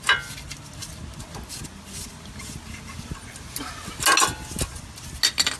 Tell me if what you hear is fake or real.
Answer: real